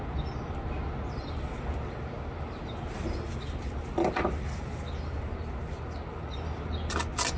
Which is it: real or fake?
real